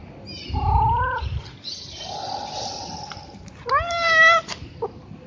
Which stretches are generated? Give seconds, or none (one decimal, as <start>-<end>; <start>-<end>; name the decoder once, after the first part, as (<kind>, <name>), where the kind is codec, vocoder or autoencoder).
none